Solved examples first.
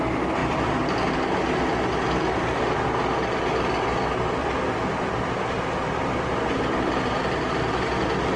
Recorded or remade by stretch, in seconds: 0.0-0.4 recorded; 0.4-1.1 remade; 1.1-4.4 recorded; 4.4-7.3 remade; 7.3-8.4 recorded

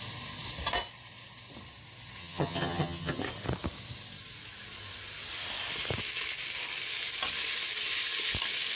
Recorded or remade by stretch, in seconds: 0.0-2.2 recorded; 2.2-3.2 remade; 3.2-8.7 recorded

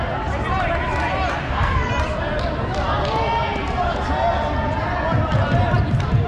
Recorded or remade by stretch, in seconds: 0.0-1.4 recorded; 1.4-1.9 remade; 1.9-6.3 recorded

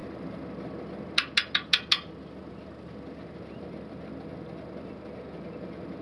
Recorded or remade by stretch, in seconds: 0.0-6.0 recorded

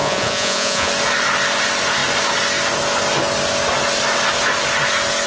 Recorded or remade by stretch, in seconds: 0.0-0.9 remade; 0.9-5.3 recorded

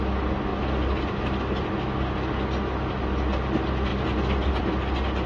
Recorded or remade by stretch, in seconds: 0.0-5.3 recorded

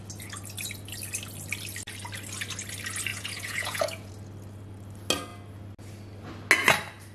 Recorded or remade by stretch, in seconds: 0.0-3.1 recorded; 3.1-4.1 remade; 4.1-7.1 recorded

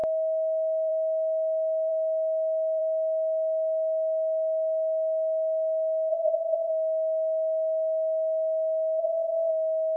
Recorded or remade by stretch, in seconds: 0.0-6.1 recorded; 6.1-6.7 remade; 6.7-9.0 recorded; 9.0-9.5 remade; 9.5-10.0 recorded